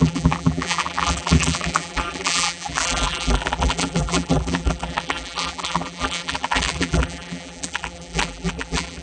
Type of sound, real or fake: fake